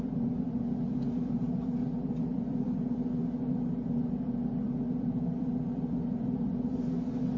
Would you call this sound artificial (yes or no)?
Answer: yes